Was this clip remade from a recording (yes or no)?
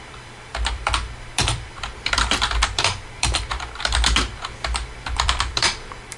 yes